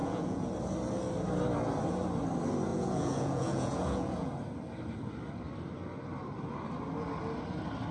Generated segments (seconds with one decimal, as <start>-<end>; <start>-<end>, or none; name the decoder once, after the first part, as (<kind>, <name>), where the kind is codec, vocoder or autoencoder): 0.0-0.5 (vocoder, Vocos); 2.7-4.3